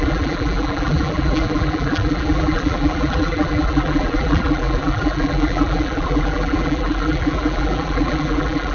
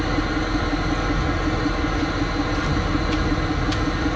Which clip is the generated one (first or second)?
first